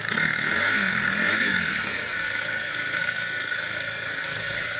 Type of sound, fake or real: fake